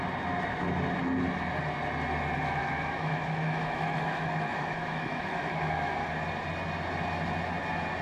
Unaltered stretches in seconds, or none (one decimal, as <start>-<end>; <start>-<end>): 0.0-2.6; 5.9-8.0